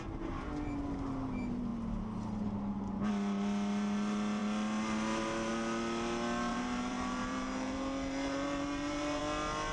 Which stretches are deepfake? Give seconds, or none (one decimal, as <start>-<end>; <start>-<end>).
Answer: 6.5-9.2